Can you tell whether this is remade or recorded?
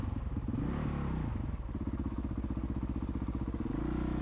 recorded